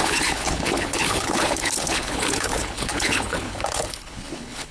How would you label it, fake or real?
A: fake